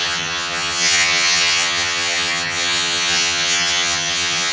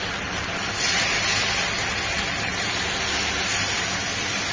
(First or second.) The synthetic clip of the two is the first